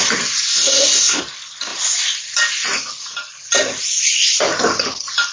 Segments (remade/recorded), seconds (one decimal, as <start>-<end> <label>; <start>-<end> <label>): 0.0-0.5 recorded; 0.5-1.2 remade; 1.2-5.3 recorded